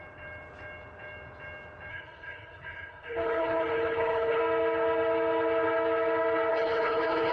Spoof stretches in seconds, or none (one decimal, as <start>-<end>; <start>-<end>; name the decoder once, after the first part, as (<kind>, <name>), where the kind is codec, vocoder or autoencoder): 1.9-4.4 (codec, HILCodec); 6.5-7.3